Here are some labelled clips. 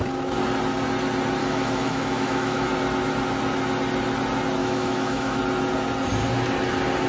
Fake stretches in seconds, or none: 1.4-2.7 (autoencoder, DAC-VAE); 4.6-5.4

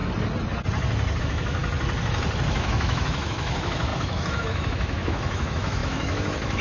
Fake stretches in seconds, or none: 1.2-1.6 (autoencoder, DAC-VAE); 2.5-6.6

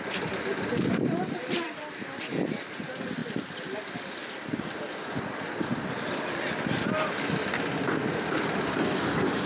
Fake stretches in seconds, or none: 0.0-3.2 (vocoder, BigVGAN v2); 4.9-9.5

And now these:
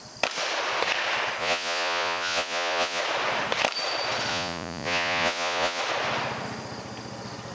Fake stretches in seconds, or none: 1.4-3.0 (vocoder, Vocos); 4.3-5.8

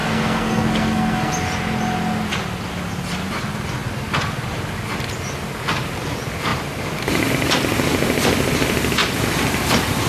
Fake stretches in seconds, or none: 0.0-1.3 (codec, SNAC)

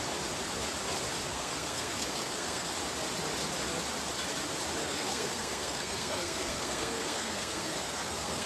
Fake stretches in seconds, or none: 1.3-2.7 (codec, SNAC); 4.8-8.5

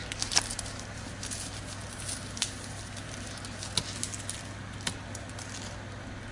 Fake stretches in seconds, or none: none

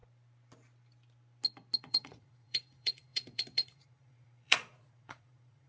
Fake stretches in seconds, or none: 1.8-5.7 (vocoder, Vocos)